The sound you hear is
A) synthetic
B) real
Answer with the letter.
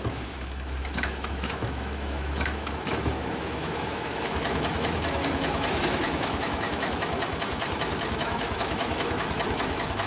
A